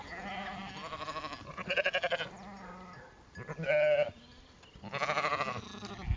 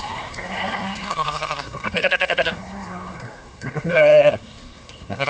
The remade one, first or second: second